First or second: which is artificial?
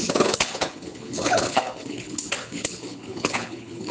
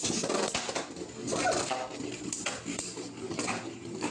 first